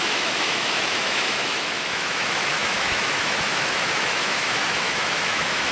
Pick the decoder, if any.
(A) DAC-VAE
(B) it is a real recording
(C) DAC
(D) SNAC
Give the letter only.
A